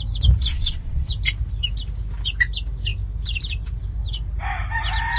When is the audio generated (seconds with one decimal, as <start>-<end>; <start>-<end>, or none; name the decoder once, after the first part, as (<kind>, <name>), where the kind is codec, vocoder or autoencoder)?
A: 0.5-1.1 (vocoder, WaveNeXt)